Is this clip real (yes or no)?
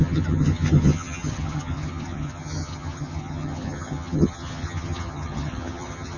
no